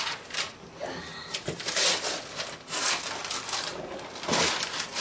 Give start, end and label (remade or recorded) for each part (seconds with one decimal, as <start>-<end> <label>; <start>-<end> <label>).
0.0-5.0 recorded